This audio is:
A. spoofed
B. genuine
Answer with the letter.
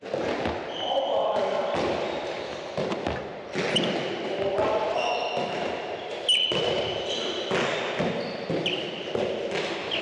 B